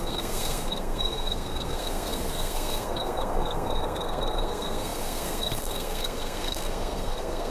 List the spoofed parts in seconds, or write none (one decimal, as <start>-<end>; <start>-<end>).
0.0-7.5